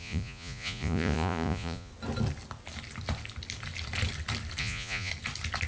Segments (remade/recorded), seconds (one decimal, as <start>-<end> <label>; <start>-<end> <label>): 0.0-1.9 remade; 1.9-4.6 recorded; 4.6-5.1 remade; 5.1-5.7 recorded